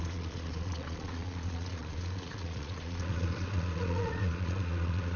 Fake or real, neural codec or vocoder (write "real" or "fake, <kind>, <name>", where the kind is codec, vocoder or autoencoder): fake, vocoder, Vocos